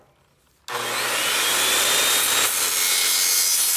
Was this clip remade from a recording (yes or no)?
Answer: no